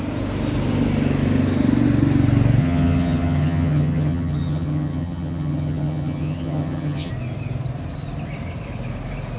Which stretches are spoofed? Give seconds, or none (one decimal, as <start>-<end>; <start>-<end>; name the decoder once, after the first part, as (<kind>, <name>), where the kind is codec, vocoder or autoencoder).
2.6-7.1 (vocoder, HiFi-GAN)